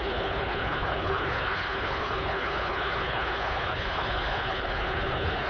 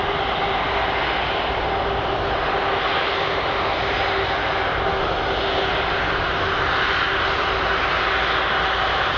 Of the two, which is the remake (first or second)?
first